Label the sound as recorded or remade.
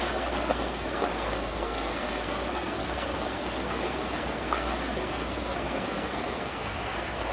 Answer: remade